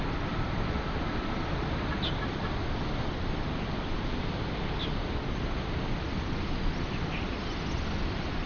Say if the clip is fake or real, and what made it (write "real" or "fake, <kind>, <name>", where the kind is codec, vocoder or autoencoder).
real